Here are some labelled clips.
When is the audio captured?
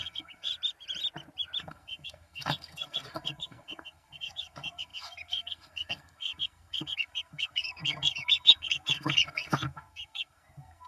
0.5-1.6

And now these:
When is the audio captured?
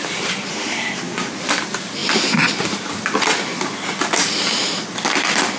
0.0-0.5; 1.3-5.6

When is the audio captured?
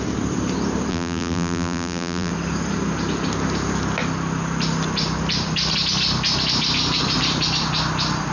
0.0-0.9; 2.3-8.3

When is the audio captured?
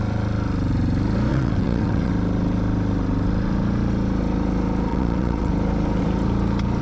0.0-1.3; 2.1-4.9; 5.5-6.8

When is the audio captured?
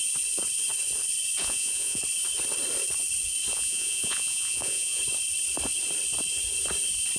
0.0-1.4; 2.0-3.5; 5.0-7.2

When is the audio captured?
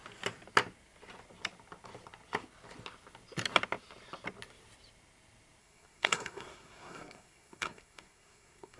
0.0-5.6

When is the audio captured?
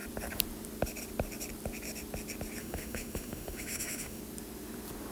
0.0-2.6; 4.2-5.1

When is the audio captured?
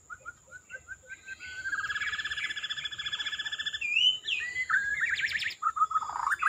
0.0-1.7; 2.9-4.9; 5.7-6.5